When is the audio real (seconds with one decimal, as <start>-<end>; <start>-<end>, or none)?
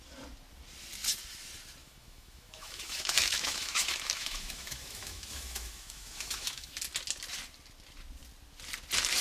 0.0-1.8; 6.8-9.2